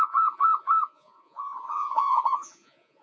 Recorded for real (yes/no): no